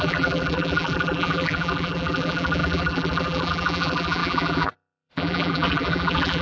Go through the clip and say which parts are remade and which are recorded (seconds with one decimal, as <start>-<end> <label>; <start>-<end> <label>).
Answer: 0.0-6.4 remade